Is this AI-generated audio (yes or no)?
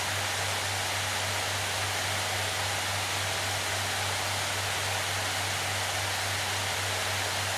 no